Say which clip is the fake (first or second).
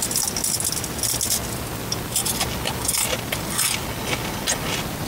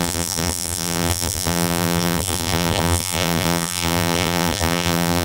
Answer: second